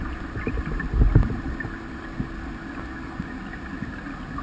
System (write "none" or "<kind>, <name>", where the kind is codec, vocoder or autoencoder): none